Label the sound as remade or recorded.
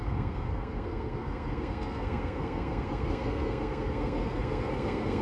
remade